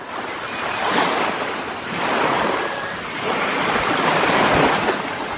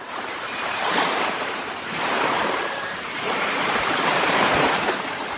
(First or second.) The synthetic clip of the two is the second